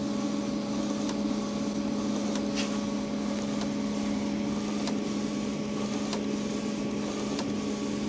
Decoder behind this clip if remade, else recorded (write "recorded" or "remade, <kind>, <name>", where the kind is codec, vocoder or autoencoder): recorded